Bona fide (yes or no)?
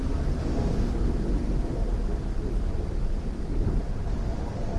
yes